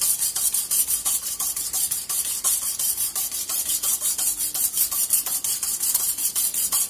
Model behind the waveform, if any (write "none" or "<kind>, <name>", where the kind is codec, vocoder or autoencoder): vocoder, BigVGAN v2